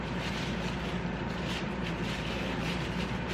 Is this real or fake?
fake